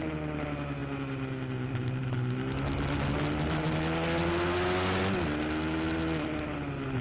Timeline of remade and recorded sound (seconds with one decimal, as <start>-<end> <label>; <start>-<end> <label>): 0.0-7.0 recorded